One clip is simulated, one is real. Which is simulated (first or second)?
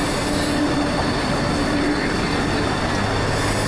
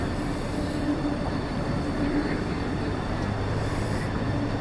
second